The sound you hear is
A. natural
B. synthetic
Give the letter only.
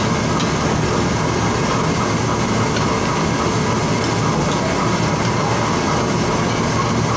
A